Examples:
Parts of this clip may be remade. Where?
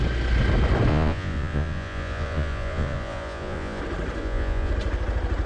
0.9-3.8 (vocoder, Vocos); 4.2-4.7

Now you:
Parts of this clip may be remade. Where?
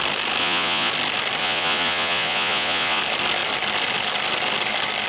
0.4-0.9 (vocoder, Vocos); 1.4-3.0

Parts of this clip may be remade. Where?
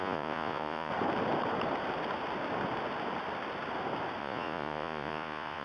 0.0-0.9 (vocoder, Vocos); 4.2-5.6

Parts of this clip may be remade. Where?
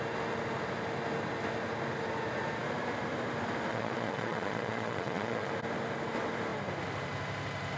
3.7-5.5 (vocoder, Vocos)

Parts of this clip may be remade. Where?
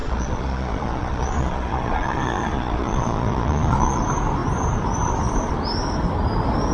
0.0-4.0 (vocoder, Vocos)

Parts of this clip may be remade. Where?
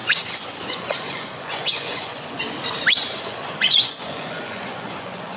0.0-2.4 (vocoder, Vocos); 3.0-5.4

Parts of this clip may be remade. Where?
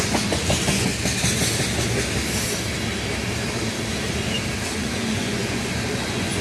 0.0-0.9 (vocoder, Vocos); 4.7-6.4